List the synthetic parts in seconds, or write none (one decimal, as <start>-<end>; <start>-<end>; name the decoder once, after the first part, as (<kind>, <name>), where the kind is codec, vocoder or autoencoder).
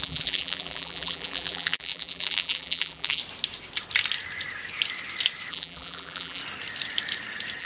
0.0-3.2 (vocoder, BigVGAN v2); 5.5-6.4